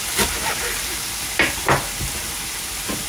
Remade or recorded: recorded